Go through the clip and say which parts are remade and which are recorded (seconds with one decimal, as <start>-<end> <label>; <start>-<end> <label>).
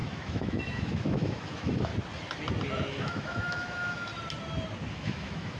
0.0-1.9 remade; 1.9-2.9 recorded; 2.9-4.1 remade; 4.1-4.9 recorded; 4.9-5.6 remade